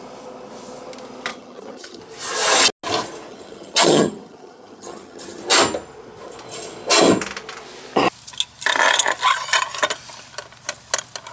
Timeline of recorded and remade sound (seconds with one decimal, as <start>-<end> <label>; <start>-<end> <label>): 0.0-1.3 recorded; 1.3-2.0 remade; 2.0-3.3 recorded; 3.3-5.4 remade; 5.4-11.3 recorded